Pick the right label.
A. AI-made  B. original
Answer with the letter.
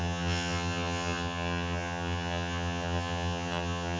A